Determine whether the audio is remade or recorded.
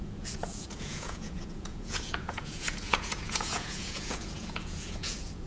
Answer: remade